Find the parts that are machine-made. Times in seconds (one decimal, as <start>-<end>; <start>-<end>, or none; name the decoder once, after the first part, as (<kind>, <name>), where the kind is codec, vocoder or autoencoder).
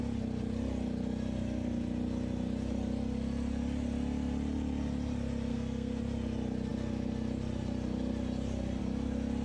5.5-6.0 (codec, SNAC)